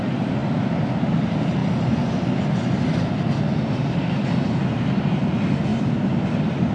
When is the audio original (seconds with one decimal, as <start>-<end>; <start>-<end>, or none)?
0.0-6.7